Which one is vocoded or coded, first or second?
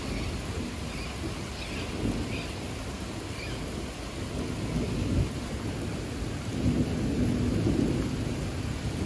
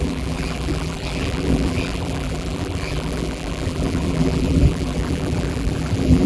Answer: second